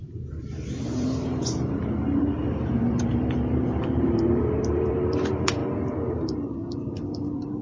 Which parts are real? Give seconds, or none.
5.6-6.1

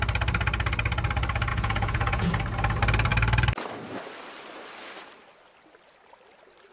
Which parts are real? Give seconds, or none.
0.0-1.5; 2.3-6.7

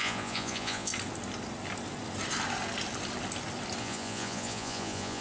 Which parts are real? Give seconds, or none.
0.9-3.8

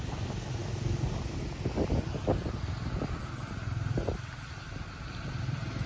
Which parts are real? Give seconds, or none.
0.0-5.9

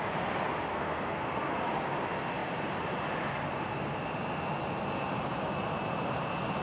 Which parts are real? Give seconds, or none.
0.0-0.7; 1.7-6.6

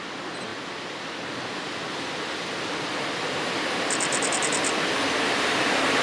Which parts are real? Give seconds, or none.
0.0-6.0

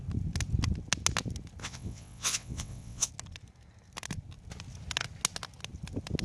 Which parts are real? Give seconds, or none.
0.0-1.6; 3.1-6.2

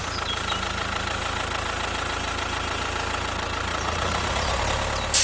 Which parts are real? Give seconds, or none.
0.0-3.7; 4.6-5.2